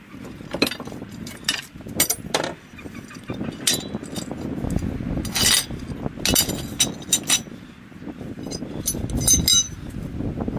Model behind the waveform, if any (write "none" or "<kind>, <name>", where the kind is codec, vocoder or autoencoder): none